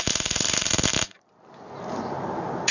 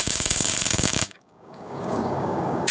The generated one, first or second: second